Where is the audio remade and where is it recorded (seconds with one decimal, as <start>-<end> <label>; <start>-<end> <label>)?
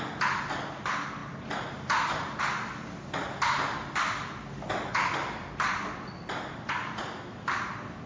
0.0-8.1 recorded